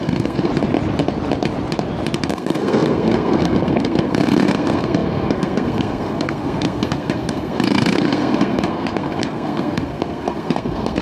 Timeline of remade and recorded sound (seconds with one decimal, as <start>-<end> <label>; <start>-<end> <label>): 0.0-0.5 remade; 0.5-2.3 recorded; 2.3-11.0 remade